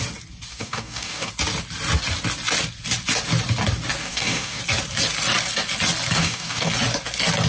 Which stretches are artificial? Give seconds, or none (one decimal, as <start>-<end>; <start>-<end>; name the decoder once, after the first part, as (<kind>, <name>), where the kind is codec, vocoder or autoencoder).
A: 0.5-1.3 (codec, DAC); 4.0-4.6; 6.2-6.7